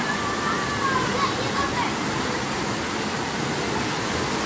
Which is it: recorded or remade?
recorded